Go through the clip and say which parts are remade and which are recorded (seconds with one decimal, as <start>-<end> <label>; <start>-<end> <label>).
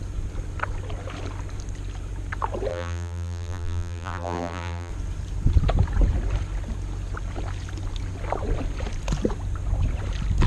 0.0-2.7 recorded; 2.7-4.9 remade; 4.9-10.5 recorded